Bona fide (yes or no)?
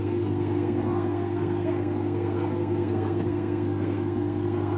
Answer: no